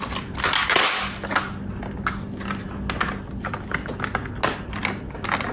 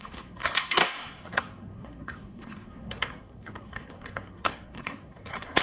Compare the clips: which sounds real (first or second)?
first